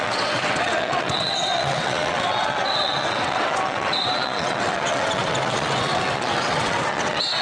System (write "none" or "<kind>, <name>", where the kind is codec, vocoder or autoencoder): vocoder, WaveNeXt